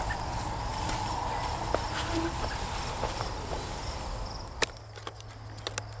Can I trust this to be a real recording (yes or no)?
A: yes